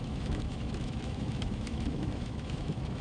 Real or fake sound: fake